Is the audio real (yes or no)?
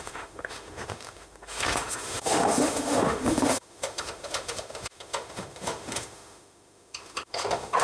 no